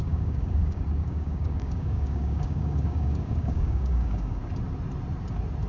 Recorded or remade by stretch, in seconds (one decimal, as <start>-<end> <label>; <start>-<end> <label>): 0.0-4.4 remade; 4.4-5.7 recorded